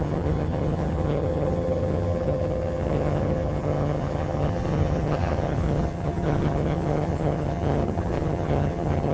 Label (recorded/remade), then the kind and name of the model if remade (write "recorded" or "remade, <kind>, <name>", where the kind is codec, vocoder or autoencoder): remade, vocoder, HiFi-GAN